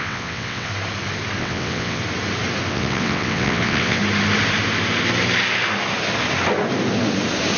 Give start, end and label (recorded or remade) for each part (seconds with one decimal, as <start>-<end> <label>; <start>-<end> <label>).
0.0-0.7 remade; 0.7-1.4 recorded; 1.4-2.0 remade; 2.0-2.7 recorded; 2.7-4.0 remade; 4.0-7.6 recorded